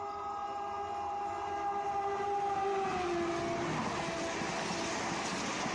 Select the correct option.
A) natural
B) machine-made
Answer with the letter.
A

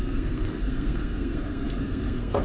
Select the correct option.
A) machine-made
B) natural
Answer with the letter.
A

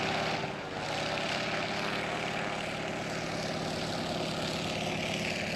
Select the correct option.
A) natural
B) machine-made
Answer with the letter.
A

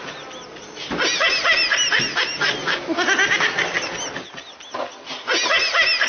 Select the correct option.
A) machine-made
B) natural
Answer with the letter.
B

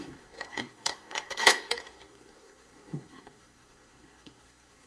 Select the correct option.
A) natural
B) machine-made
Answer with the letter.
B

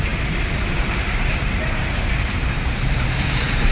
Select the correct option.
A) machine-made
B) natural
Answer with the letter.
A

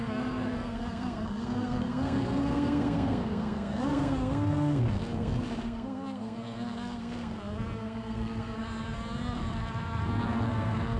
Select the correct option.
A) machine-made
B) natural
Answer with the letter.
A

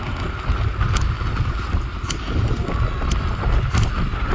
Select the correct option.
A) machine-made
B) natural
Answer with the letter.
B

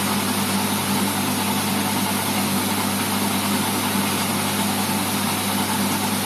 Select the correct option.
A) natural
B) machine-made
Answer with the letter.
A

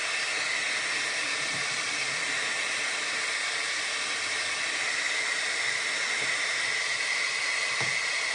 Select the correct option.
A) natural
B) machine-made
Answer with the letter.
A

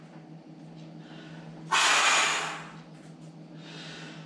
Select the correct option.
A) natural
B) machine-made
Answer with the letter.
A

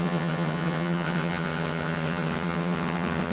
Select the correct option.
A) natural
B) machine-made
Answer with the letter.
B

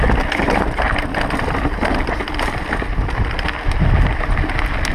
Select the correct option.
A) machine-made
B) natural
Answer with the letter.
B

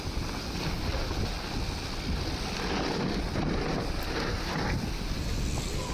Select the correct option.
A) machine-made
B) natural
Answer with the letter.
B